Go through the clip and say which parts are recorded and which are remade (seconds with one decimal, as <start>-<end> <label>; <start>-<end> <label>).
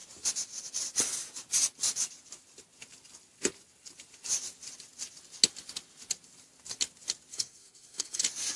0.0-7.3 recorded; 7.3-8.2 remade; 8.2-8.6 recorded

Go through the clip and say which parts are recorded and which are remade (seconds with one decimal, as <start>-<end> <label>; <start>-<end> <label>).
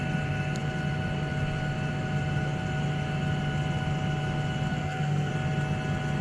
0.0-4.7 recorded; 4.7-5.3 remade; 5.3-6.2 recorded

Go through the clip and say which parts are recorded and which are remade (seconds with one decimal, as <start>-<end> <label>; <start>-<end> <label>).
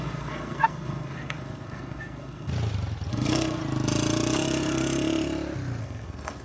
0.0-2.5 remade; 2.5-3.1 recorded; 3.1-3.6 remade; 3.6-5.8 recorded; 5.8-6.4 remade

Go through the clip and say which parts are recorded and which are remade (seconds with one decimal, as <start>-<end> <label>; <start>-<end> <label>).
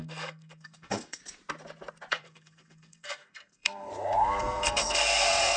0.0-1.2 remade; 1.2-2.1 recorded; 2.1-3.9 remade; 3.9-4.4 recorded; 4.4-5.6 remade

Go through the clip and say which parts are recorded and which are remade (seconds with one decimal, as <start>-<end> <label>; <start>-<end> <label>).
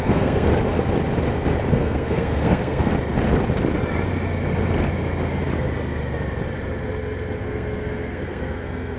0.0-0.5 remade; 0.5-1.7 recorded; 1.7-2.9 remade; 2.9-7.4 recorded; 7.4-9.0 remade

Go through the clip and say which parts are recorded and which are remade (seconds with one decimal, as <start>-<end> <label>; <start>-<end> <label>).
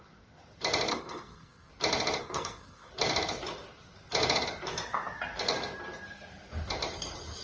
0.0-0.9 recorded; 0.9-1.7 remade; 1.7-2.2 recorded; 2.2-2.9 remade; 2.9-7.4 recorded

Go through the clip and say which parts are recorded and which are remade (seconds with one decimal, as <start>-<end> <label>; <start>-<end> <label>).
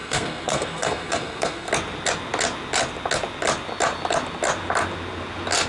0.0-1.7 remade; 1.7-5.7 recorded